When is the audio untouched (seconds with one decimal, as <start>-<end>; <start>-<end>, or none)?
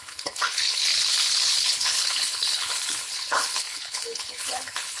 none